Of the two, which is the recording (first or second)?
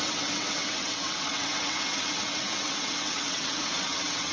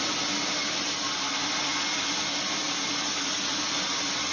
second